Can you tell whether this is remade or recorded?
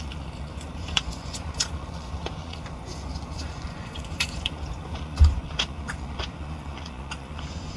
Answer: remade